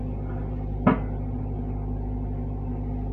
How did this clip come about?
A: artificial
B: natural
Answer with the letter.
B